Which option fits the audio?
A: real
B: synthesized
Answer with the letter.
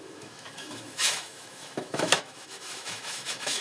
B